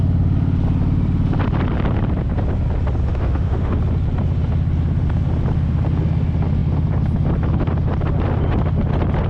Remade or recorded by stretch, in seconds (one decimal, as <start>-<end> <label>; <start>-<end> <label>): 0.0-3.1 recorded; 3.1-3.8 remade; 3.8-9.3 recorded